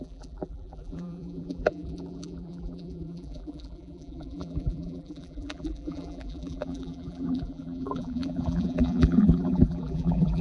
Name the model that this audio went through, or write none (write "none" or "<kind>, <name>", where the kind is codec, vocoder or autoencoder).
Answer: vocoder, BigVGAN v2